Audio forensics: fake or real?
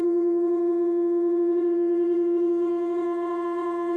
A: fake